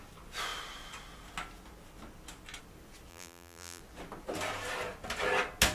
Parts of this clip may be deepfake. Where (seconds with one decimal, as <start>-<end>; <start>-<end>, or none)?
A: 3.1-3.8